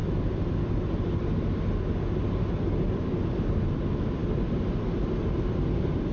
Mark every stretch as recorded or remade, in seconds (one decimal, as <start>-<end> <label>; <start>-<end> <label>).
0.0-6.1 recorded